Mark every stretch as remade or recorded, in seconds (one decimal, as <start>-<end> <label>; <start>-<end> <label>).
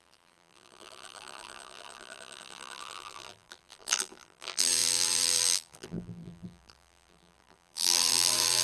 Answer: 0.0-8.6 remade